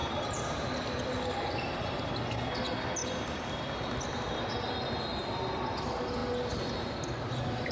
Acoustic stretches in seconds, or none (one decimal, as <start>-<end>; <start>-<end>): 2.1-3.0; 3.5-7.7